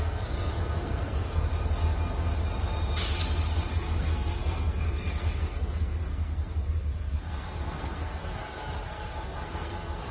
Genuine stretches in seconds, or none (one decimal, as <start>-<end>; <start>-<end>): 1.5-3.7